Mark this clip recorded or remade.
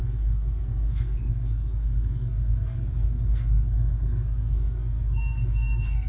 remade